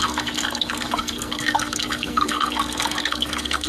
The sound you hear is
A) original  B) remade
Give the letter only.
B